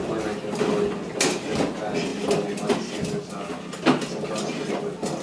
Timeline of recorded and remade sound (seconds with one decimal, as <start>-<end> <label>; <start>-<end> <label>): 0.0-5.2 recorded

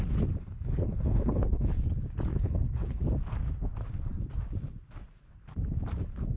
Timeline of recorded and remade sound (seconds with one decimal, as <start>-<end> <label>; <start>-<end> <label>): 0.0-0.4 recorded; 0.4-1.7 remade; 1.7-2.3 recorded; 2.3-3.0 remade; 3.0-6.4 recorded

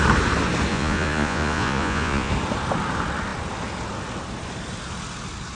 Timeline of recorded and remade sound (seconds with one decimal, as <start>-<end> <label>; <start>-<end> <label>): 0.0-0.7 recorded; 0.7-2.3 remade; 2.3-5.5 recorded

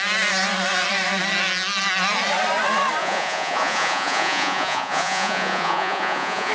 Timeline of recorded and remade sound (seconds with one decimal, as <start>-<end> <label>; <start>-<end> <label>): 0.0-3.0 recorded; 3.0-6.5 remade

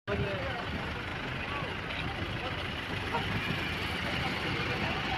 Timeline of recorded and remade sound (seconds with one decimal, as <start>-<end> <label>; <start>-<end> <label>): 0.0-5.2 recorded